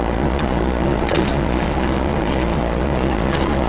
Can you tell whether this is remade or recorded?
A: remade